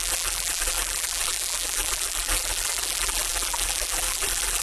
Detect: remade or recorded remade